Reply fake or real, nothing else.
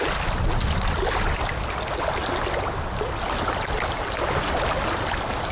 real